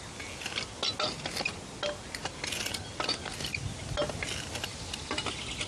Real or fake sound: real